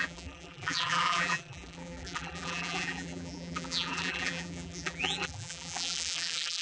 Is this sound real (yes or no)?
no